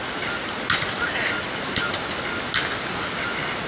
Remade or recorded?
recorded